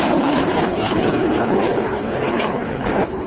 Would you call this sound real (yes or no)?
no